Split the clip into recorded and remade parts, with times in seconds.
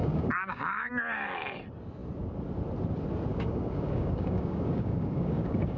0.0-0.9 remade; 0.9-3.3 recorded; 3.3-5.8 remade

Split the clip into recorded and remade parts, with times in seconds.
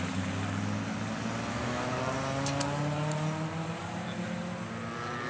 0.0-1.5 recorded; 1.5-2.0 remade; 2.0-5.3 recorded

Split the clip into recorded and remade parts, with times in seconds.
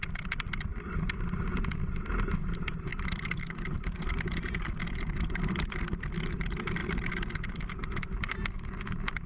0.0-9.3 recorded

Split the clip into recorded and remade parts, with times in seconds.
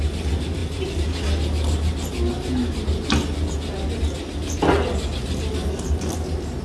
0.0-6.6 recorded